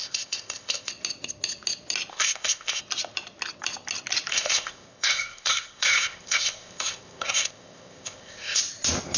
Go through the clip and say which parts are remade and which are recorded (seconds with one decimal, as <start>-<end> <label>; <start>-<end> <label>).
0.0-0.9 remade; 0.9-2.1 recorded; 2.1-2.8 remade; 2.8-4.3 recorded; 4.3-8.6 remade; 8.6-9.2 recorded